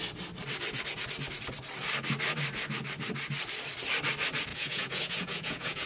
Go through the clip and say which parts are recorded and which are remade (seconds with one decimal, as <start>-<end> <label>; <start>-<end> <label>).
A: 0.0-4.5 recorded; 4.5-5.9 remade